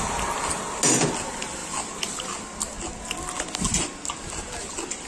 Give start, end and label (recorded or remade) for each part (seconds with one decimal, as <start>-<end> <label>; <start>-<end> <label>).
0.0-5.1 recorded